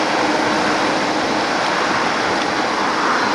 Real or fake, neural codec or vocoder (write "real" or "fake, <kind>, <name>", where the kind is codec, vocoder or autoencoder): fake, vocoder, BigVGAN v2